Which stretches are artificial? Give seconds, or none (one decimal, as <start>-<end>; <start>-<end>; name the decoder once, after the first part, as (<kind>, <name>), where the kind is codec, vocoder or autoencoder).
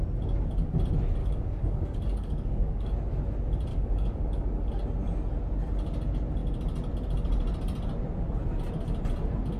1.2-2.9 (codec, DAC); 3.7-4.7